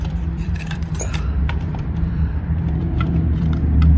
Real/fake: fake